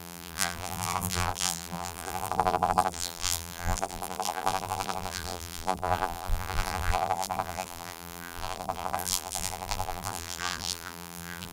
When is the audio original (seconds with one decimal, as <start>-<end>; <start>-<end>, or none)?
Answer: none